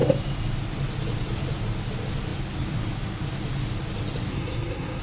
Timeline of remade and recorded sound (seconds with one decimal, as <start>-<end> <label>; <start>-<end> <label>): 0.0-4.3 recorded; 4.3-5.0 remade